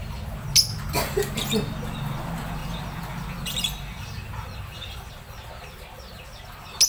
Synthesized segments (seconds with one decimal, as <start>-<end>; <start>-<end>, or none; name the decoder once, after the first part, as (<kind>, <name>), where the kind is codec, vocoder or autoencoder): none